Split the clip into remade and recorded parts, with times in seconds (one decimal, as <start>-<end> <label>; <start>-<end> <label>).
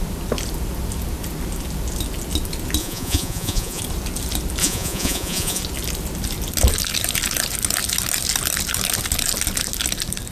0.0-2.8 recorded; 2.8-3.8 remade; 3.8-4.6 recorded; 4.6-5.6 remade; 5.6-10.3 recorded